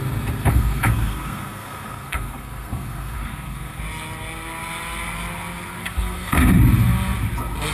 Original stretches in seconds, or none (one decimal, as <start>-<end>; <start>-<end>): 0.0-0.4; 3.8-5.8; 6.6-7.7

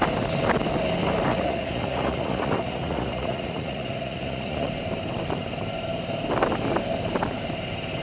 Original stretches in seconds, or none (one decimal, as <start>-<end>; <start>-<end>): 0.0-1.3; 4.7-8.0

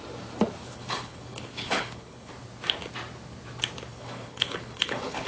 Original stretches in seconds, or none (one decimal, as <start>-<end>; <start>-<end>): 0.0-0.6; 2.3-3.9

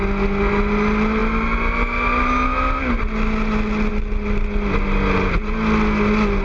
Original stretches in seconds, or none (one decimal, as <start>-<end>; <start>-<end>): 0.0-6.4

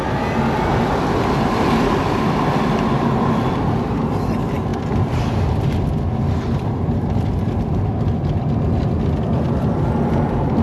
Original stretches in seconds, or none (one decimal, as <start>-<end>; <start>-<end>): 0.0-10.6

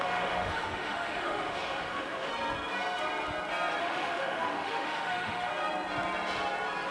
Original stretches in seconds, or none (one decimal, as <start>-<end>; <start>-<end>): 2.3-3.8; 5.5-6.9

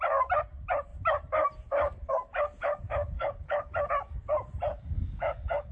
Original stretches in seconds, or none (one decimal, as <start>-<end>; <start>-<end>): 0.0-2.6; 3.7-4.7